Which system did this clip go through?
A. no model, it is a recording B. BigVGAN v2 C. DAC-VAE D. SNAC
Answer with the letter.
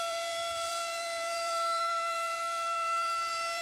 B